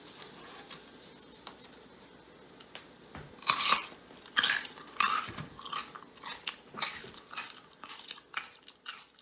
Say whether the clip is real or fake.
real